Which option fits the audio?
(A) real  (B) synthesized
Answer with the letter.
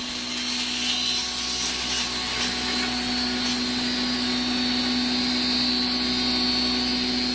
A